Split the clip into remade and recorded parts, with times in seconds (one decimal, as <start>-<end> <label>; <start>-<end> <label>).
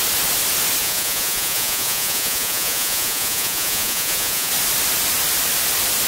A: 0.0-0.8 recorded; 0.8-4.5 remade; 4.5-6.1 recorded